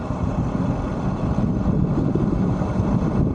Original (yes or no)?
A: yes